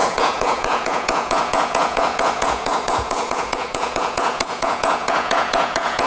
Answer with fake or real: fake